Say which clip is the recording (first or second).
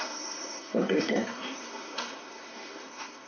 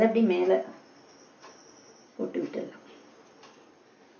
second